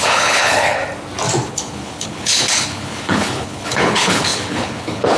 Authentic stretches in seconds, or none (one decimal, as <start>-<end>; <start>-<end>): 0.8-1.5